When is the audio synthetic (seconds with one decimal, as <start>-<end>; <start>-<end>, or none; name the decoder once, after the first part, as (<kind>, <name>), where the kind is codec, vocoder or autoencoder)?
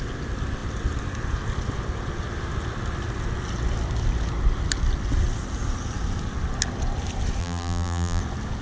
7.4-8.2 (vocoder, BigVGAN v2)